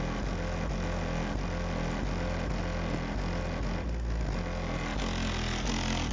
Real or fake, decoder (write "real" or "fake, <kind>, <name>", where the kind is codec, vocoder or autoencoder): real